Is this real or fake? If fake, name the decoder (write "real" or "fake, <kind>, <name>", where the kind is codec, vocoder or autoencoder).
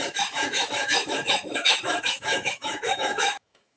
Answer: fake, autoencoder, DAC-VAE